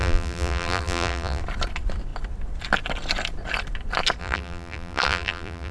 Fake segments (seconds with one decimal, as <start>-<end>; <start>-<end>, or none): 0.0-1.4; 4.2-5.7